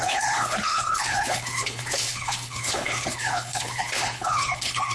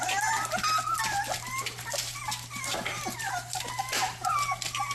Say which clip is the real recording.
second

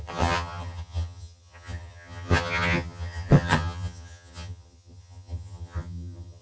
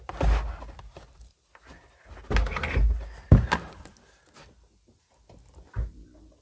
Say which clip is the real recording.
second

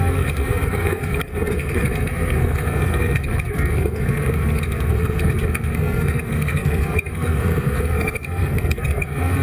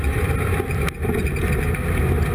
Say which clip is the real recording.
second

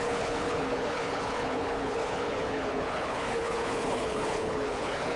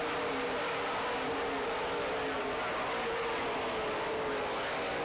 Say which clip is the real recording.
second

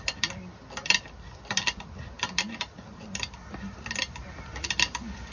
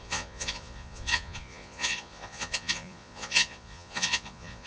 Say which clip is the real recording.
first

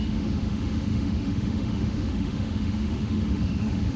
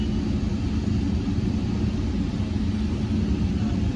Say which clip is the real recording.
second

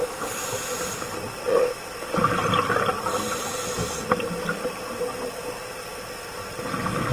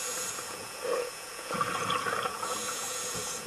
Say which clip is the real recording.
first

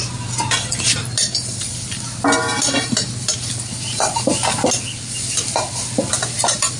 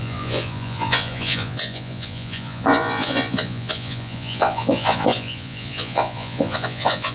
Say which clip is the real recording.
first